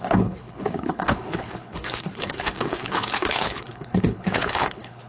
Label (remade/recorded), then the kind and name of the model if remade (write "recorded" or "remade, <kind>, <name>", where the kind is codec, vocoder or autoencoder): remade, codec, HILCodec